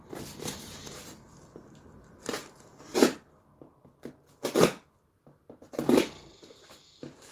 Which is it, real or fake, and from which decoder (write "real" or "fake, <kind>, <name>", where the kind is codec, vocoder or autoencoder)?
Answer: real